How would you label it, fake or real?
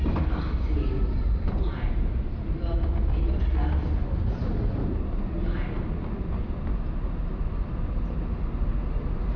real